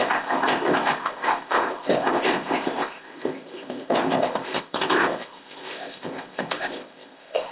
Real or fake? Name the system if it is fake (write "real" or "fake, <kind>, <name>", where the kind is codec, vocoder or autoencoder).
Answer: fake, codec, ZipCodec